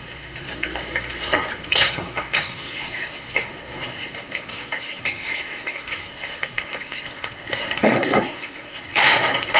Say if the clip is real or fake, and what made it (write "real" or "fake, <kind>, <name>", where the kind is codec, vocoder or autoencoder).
fake, codec, SNAC